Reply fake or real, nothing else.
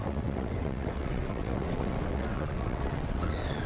fake